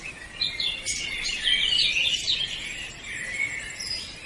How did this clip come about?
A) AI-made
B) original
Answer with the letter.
B